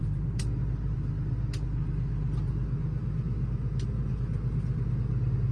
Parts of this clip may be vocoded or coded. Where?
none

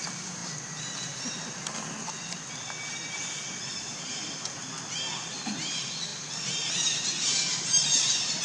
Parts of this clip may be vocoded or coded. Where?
none

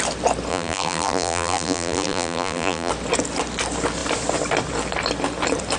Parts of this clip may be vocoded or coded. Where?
0.5-2.9 (vocoder, BigVGAN v2)

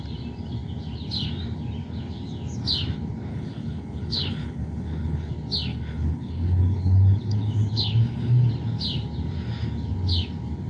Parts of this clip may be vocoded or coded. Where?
3.3-5.3 (codec, HILCodec); 5.7-8.5

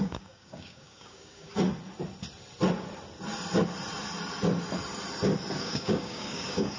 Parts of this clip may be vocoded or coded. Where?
0.0-1.5 (codec, DAC); 5.6-6.8

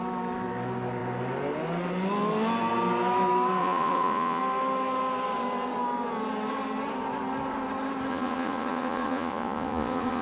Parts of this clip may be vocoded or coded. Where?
3.6-4.4 (vocoder, Vocos); 8.1-10.2

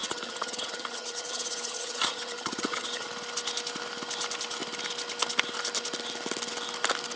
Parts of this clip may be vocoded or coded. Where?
0.0-3.1 (vocoder, HiFi-GAN)

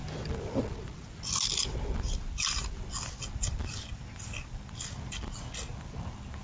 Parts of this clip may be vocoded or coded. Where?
none